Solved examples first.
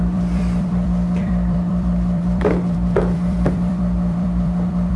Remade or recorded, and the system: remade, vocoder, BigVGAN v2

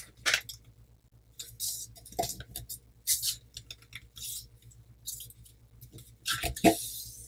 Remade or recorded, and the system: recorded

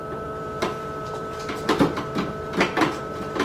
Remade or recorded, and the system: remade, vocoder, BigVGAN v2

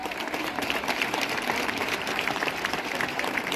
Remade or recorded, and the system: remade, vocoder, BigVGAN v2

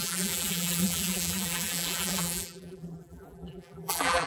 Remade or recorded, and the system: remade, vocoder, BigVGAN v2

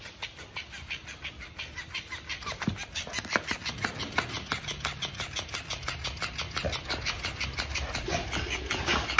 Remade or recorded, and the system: recorded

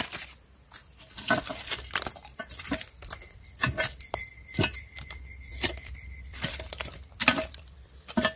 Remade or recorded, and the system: remade, vocoder, BigVGAN v2